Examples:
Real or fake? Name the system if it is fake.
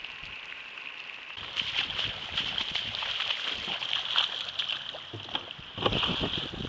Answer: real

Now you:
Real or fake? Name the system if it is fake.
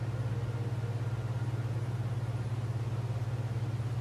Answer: real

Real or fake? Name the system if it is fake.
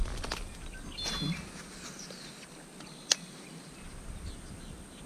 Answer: real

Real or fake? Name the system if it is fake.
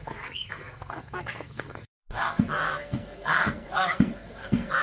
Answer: fake, codec, SNAC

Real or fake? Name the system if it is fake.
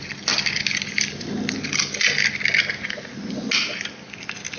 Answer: real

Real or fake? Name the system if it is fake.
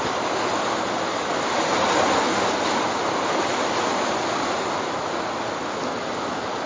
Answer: real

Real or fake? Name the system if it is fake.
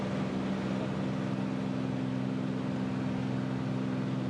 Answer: real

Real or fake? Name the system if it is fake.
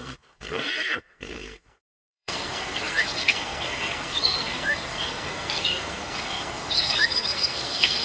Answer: fake, codec, SNAC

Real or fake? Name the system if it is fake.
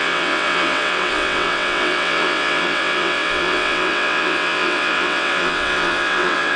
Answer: fake, vocoder, WaveNeXt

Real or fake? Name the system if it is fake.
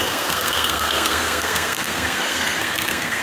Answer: fake, codec, SNAC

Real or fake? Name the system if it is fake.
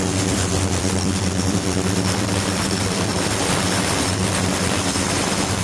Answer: fake, vocoder, BigVGAN v2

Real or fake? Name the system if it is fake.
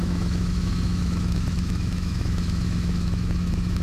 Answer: fake, autoencoder, DAC-VAE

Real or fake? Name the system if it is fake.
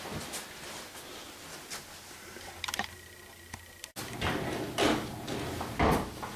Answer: real